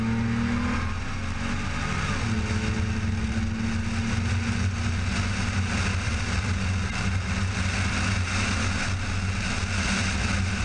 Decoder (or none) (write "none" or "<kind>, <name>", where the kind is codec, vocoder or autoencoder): none